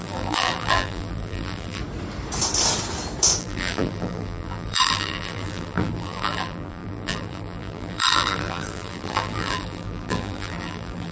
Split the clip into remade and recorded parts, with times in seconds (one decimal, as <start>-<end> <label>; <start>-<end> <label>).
0.0-1.8 remade; 1.8-3.4 recorded; 3.4-11.1 remade